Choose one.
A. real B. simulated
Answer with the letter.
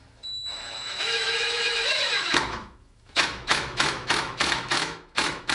B